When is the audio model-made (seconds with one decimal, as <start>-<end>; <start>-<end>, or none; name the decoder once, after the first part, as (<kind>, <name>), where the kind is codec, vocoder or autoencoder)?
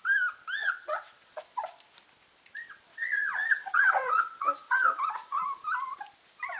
0.6-1.4 (vocoder, WaveNeXt); 2.9-5.4